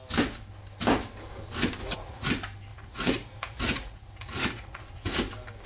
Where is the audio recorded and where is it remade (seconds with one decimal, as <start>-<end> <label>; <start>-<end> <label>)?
0.0-1.8 recorded; 1.8-2.3 remade; 2.3-2.7 recorded; 2.7-5.1 remade; 5.1-5.7 recorded